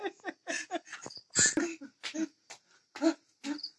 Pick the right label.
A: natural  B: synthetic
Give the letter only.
A